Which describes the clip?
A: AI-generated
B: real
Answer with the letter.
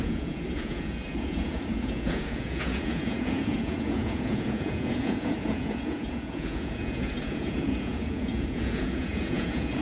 A